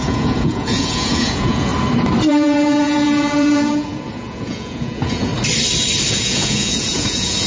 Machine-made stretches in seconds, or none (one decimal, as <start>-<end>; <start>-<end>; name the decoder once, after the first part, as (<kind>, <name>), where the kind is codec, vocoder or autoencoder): 0.0-1.7 (vocoder, Vocos); 2.3-5.3; 6.1-7.5